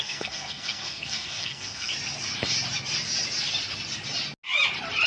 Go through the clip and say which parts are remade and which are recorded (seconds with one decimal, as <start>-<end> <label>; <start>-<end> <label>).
0.0-1.9 remade; 1.9-5.1 recorded